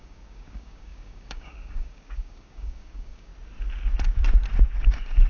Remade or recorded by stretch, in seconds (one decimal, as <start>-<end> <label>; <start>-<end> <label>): 0.0-3.3 remade; 3.3-5.3 recorded

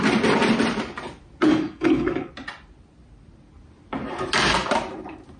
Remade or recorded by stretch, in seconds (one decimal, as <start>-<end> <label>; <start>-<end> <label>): 0.0-1.5 recorded; 1.5-2.3 remade; 2.3-5.4 recorded